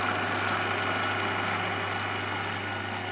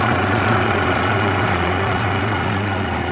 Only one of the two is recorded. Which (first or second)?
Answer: first